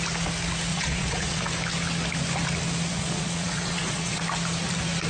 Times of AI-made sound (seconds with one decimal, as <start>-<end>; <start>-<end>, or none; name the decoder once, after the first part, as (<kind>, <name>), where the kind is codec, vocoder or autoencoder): 0.7-1.4 (vocoder, Vocos); 2.9-4.2

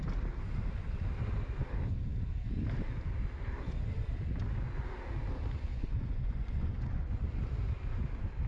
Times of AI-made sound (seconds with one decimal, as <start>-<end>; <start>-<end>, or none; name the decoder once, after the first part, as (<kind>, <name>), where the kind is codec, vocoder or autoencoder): 5.7-7.2 (vocoder, Vocos)

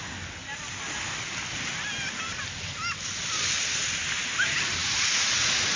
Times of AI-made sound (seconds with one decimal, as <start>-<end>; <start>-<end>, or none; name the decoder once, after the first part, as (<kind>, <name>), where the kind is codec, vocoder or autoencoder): 4.8-5.8 (vocoder, Vocos)